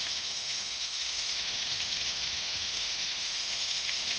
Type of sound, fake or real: fake